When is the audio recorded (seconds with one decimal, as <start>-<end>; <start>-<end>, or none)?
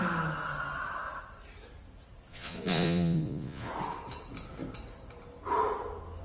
0.0-2.3; 3.7-6.2